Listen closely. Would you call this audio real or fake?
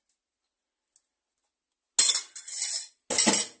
real